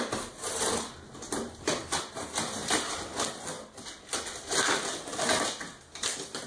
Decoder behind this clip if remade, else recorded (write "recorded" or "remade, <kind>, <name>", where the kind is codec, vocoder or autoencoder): recorded